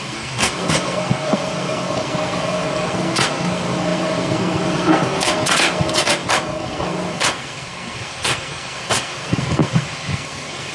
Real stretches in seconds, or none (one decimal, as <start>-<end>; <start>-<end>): none